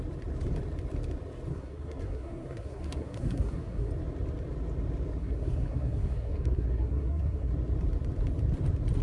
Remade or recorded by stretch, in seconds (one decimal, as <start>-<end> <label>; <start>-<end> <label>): 0.0-1.5 recorded; 1.5-3.9 remade; 3.9-5.2 recorded; 5.2-7.5 remade; 7.5-9.0 recorded